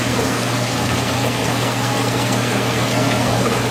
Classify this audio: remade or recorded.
remade